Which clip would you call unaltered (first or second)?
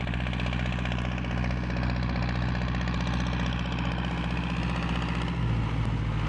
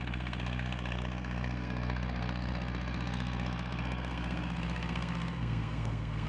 first